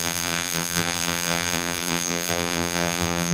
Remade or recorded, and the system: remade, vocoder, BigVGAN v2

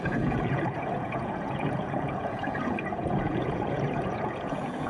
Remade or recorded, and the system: remade, vocoder, Vocos